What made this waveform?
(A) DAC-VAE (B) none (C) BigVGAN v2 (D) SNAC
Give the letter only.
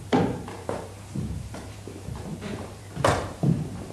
C